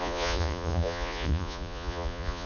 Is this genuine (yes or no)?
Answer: no